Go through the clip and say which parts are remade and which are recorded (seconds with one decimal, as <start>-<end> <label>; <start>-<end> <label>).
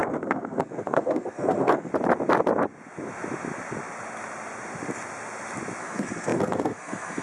0.0-1.9 remade; 1.9-5.8 recorded; 5.8-7.2 remade